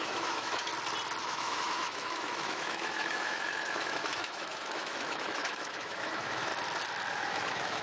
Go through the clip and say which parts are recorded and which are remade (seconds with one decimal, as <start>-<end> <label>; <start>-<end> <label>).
0.0-0.7 remade; 0.7-1.2 recorded; 1.2-6.5 remade; 6.5-7.1 recorded; 7.1-7.8 remade

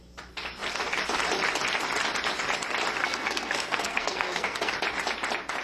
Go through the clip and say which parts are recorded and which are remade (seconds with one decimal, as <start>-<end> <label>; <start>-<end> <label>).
0.0-3.0 recorded; 3.0-4.7 remade; 4.7-5.6 recorded